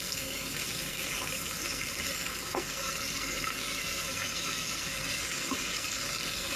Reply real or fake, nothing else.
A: fake